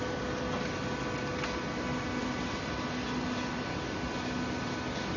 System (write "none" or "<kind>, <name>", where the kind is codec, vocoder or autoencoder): none